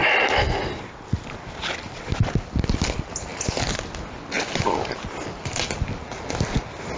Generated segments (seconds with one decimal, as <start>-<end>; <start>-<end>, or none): none